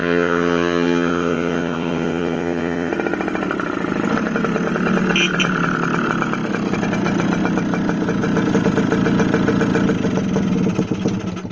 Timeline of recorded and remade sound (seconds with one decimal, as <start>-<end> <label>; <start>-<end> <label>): 0.0-2.9 remade; 2.9-11.5 recorded